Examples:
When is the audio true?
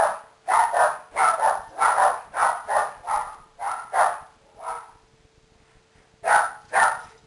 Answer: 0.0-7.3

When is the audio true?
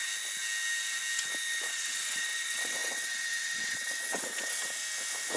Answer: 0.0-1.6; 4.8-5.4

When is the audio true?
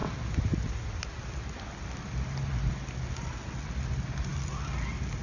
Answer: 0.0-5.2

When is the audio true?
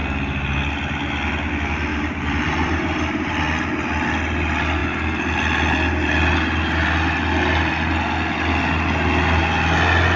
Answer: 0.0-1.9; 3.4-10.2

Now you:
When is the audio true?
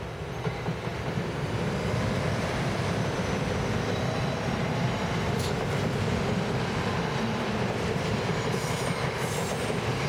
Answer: 0.0-10.1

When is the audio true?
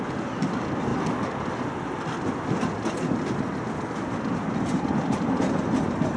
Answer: 0.0-6.2